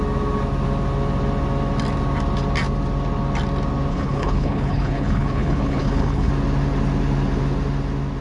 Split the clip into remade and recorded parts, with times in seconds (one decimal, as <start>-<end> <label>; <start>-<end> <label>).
0.0-3.9 recorded; 3.9-6.3 remade; 6.3-8.2 recorded